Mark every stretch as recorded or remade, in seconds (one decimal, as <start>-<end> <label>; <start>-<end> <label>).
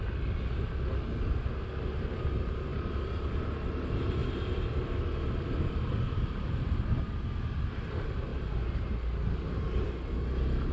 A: 0.0-8.3 recorded; 8.3-8.9 remade; 8.9-10.7 recorded